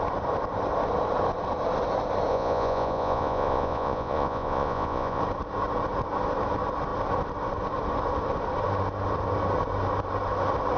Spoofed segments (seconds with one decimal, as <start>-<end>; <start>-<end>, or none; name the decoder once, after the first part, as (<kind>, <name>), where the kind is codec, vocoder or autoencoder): 2.3-5.2 (vocoder, Vocos)